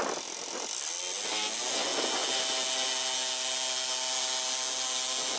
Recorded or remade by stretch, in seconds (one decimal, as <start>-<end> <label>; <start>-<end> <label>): 0.0-5.4 recorded